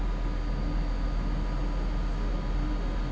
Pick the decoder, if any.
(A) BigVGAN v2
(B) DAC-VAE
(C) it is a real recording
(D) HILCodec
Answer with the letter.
C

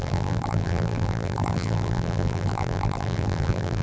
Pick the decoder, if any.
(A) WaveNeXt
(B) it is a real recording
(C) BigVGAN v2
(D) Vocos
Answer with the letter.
C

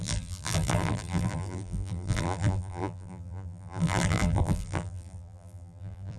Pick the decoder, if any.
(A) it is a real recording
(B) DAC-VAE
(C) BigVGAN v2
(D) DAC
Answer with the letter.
C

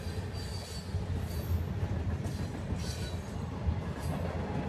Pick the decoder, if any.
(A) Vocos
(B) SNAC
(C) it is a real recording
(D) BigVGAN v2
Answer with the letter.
C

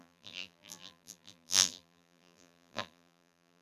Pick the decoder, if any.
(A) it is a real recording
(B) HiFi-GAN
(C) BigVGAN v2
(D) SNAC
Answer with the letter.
C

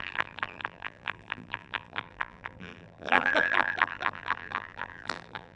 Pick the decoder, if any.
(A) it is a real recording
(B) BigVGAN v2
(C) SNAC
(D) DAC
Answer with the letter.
B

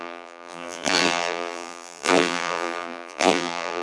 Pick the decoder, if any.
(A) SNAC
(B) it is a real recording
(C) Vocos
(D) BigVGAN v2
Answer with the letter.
D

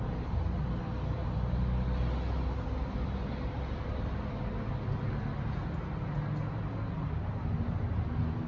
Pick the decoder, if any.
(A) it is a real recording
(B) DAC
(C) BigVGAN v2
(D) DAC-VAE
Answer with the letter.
A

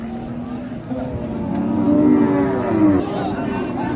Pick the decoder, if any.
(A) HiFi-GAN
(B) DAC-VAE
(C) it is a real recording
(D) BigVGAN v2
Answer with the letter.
C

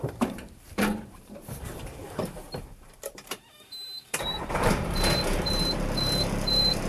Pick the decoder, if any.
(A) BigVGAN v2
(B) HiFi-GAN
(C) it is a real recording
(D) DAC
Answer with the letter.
A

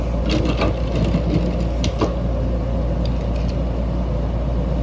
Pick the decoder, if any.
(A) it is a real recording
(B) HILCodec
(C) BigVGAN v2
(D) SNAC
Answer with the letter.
A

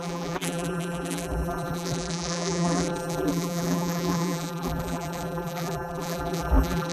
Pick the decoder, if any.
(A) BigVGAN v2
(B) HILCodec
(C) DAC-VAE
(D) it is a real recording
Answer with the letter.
A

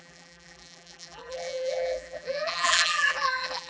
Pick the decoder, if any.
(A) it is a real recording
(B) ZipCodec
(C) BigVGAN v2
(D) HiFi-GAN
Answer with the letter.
C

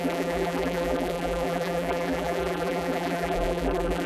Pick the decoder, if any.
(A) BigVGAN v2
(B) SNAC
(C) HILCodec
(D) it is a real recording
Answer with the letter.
A